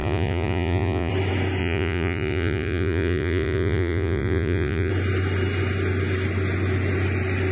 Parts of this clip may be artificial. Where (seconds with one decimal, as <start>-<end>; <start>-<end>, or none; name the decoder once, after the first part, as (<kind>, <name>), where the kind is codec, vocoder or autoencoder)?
0.0-1.1 (vocoder, Vocos); 1.6-4.9